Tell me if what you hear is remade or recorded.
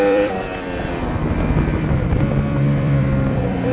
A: remade